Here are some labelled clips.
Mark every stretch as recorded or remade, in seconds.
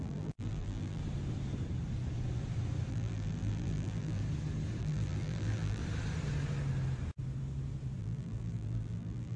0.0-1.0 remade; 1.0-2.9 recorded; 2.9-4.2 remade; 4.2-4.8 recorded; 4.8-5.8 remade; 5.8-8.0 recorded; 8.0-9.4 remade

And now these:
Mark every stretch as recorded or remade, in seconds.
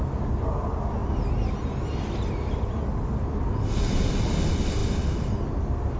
0.0-6.0 recorded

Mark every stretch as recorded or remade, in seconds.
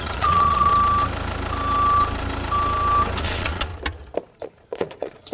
0.0-0.7 remade; 0.7-3.2 recorded; 3.2-3.7 remade; 3.7-4.3 recorded; 4.3-5.3 remade